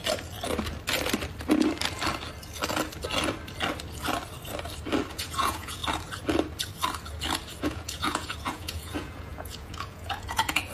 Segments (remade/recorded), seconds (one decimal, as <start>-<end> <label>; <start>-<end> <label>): 0.0-5.1 recorded; 5.1-5.8 remade; 5.8-7.6 recorded; 7.6-10.7 remade